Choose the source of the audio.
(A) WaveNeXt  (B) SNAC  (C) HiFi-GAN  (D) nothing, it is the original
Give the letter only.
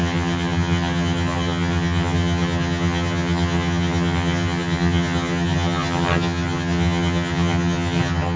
C